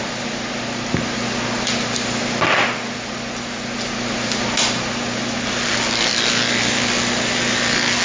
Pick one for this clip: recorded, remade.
recorded